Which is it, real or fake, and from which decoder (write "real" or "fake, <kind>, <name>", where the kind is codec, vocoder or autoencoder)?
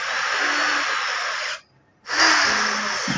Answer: real